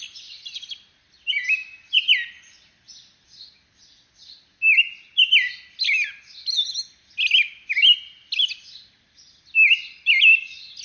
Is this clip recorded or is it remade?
recorded